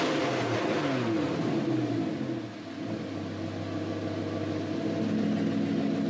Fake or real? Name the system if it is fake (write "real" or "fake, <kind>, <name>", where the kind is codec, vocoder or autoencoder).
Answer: real